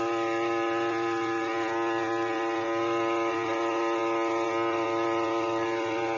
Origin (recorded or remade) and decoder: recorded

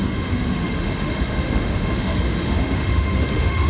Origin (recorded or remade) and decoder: remade, autoencoder, DAC-VAE